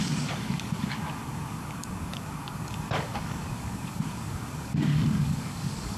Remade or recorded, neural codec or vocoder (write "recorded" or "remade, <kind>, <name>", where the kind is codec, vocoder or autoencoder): remade, codec, DAC